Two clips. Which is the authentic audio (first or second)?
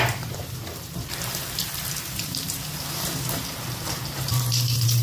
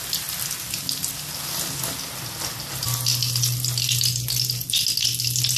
second